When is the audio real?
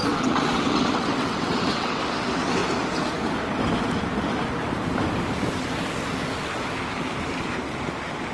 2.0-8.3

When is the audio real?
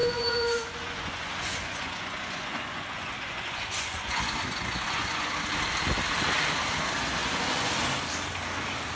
5.3-7.2; 7.7-9.0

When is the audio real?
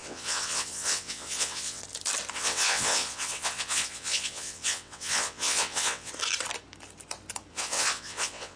1.8-2.3; 6.1-7.5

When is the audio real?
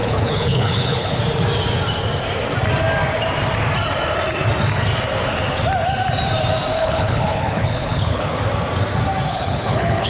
1.2-6.7; 8.4-9.3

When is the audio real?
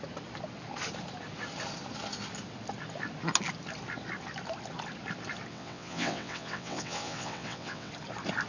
0.0-5.5; 7.9-8.5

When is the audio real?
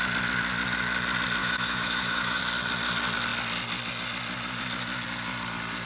0.0-1.4; 2.4-5.9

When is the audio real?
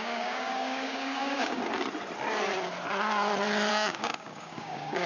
1.6-3.7